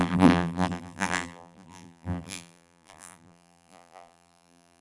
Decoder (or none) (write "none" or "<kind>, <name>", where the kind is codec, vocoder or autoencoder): vocoder, BigVGAN v2